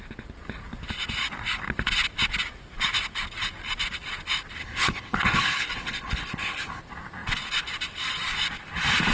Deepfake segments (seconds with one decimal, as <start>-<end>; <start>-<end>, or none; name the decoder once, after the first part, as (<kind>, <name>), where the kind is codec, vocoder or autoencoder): 4.6-6.8 (codec, HILCodec)